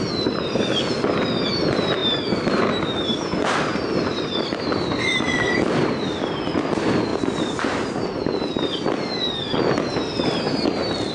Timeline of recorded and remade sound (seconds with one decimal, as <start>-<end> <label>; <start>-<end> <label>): 0.0-11.1 recorded